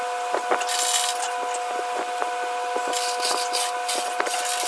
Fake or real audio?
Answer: real